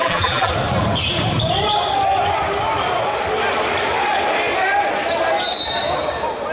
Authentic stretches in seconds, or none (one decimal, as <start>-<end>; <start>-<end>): 0.5-6.5